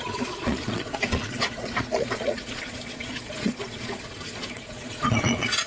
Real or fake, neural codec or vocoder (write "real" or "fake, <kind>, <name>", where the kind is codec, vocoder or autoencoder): fake, vocoder, Vocos